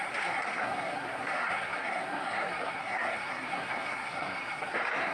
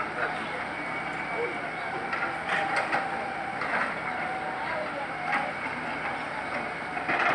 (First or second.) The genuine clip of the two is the second